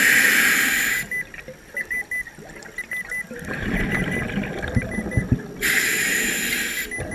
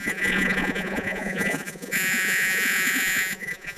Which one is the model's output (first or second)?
second